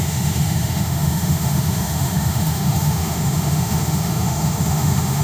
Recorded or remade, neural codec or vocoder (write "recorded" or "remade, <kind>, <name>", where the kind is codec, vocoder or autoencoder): remade, autoencoder, DAC-VAE